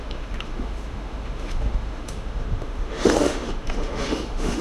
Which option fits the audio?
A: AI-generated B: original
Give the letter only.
A